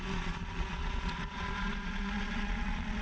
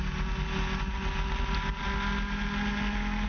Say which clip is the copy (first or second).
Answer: first